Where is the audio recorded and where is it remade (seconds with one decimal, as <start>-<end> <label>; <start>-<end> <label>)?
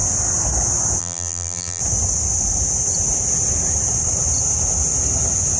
0.0-1.0 recorded; 1.0-1.8 remade; 1.8-5.6 recorded